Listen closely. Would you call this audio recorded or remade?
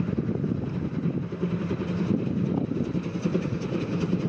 recorded